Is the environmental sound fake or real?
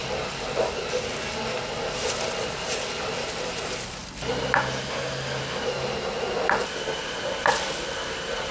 real